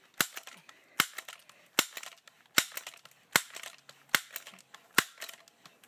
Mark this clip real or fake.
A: real